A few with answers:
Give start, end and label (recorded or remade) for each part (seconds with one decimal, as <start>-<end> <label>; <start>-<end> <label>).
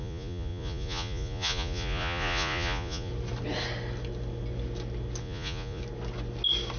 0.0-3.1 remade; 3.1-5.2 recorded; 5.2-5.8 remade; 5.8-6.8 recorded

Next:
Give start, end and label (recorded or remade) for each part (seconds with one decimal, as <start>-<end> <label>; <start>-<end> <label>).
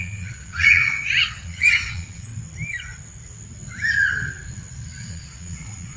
0.0-2.3 remade; 2.3-5.0 recorded; 5.0-6.0 remade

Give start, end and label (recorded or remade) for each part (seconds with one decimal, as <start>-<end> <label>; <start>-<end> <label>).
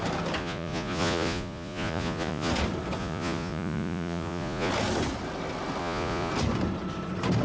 0.0-0.4 recorded; 0.4-2.5 remade; 2.5-3.0 recorded; 3.0-4.7 remade; 4.7-5.8 recorded; 5.8-6.3 remade; 6.3-7.4 recorded